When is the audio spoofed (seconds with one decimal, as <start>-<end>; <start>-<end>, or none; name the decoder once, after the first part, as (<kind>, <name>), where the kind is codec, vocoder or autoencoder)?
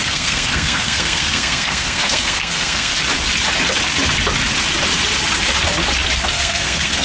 0.0-2.9 (codec, SNAC); 6.3-7.0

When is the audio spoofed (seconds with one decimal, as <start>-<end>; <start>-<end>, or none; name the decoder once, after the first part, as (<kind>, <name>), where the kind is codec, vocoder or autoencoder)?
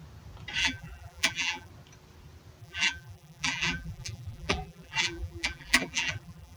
0.6-1.7 (vocoder, BigVGAN v2); 2.6-6.6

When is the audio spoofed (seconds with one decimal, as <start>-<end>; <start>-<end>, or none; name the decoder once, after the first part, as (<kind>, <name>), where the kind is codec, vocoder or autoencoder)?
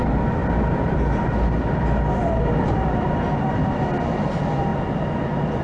0.4-3.5 (vocoder, BigVGAN v2)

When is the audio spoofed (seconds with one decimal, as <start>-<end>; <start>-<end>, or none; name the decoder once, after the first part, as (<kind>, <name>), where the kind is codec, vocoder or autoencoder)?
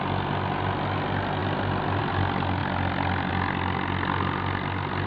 none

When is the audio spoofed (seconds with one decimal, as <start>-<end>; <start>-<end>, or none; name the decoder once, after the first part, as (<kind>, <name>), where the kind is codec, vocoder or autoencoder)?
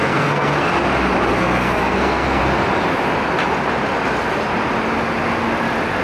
0.0-0.7 (codec, SNAC); 1.4-2.4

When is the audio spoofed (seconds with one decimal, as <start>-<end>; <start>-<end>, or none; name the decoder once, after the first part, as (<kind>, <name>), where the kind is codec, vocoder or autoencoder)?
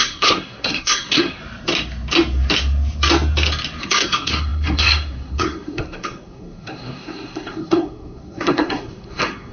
0.0-1.4 (codec, SNAC); 3.8-9.5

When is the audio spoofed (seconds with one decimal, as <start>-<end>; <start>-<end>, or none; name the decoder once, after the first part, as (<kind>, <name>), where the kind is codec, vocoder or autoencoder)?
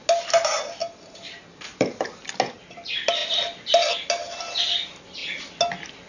none